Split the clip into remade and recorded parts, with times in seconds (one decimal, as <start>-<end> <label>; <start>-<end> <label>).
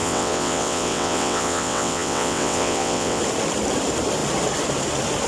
0.0-3.2 remade; 3.2-5.3 recorded